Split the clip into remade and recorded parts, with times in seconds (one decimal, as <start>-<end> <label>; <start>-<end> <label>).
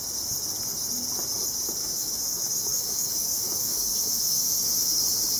0.0-1.8 recorded; 1.8-5.0 remade; 5.0-5.4 recorded